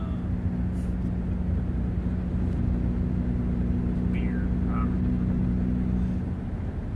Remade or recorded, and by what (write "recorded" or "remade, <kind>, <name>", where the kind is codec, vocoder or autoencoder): recorded